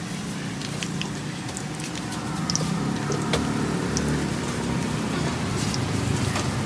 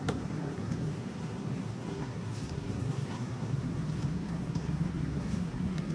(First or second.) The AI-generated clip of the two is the second